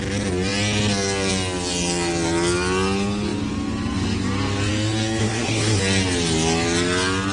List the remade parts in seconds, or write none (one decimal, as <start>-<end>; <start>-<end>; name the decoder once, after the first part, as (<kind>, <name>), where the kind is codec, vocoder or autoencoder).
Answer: 5.2-5.8 (codec, SNAC)

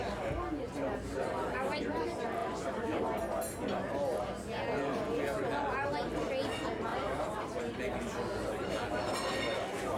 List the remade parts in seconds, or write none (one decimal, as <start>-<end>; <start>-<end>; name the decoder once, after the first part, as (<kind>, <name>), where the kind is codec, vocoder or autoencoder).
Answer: 2.4-3.2 (vocoder, BigVGAN v2); 6.9-7.6

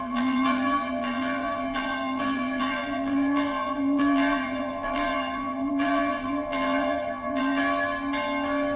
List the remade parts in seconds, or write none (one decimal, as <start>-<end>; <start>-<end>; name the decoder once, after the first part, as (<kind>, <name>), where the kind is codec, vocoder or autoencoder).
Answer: 0.0-7.6 (vocoder, BigVGAN v2)

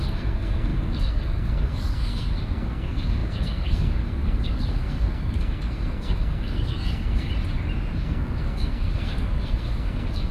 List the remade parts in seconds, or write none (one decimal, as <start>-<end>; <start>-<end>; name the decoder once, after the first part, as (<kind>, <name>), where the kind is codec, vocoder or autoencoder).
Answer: 0.0-7.3 (codec, SNAC); 8.0-10.3

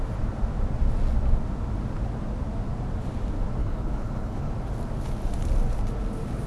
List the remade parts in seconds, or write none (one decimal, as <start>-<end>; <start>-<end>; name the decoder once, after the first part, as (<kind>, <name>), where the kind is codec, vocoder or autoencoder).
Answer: 3.6-4.5 (codec, HILCodec)

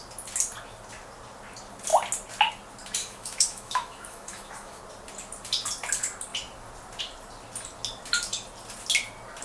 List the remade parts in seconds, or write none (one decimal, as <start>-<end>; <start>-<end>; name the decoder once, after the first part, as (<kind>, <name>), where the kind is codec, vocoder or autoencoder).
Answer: 3.0-4.8 (autoencoder, DAC-VAE)

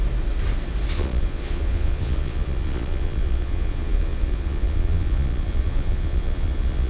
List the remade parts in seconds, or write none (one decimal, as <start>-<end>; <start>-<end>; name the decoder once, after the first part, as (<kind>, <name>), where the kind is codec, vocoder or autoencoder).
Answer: 0.9-6.9 (vocoder, Vocos)